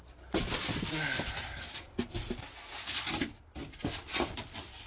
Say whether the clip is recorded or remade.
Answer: recorded